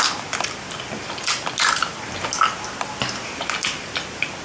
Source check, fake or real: real